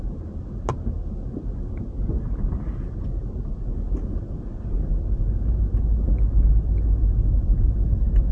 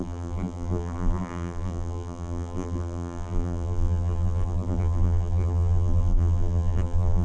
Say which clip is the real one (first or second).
first